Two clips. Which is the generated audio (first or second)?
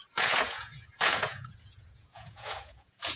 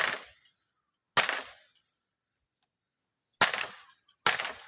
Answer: first